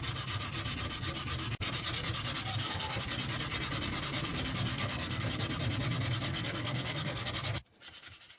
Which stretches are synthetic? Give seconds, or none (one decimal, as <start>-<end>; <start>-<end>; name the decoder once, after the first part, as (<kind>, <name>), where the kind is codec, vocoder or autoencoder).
2.5-3.0 (codec, SNAC); 4.7-5.3; 6.3-7.3